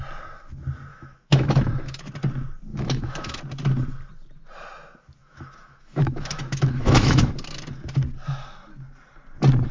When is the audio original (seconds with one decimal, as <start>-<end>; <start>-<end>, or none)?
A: 0.0-0.9; 2.1-2.7; 3.4-5.2; 7.3-9.7